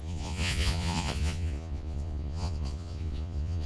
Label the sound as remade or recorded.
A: remade